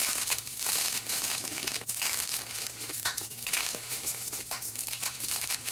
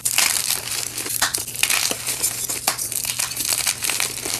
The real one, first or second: second